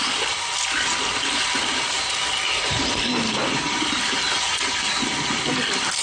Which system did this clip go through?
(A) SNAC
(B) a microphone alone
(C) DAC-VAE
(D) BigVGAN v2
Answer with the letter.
B